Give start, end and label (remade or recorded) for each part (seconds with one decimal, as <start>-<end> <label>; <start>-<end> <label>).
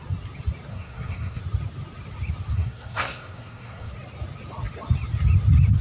0.0-0.7 recorded; 0.7-1.4 remade; 1.4-2.5 recorded; 2.5-3.9 remade; 3.9-5.8 recorded